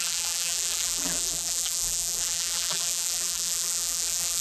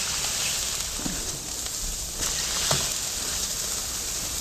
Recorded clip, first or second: second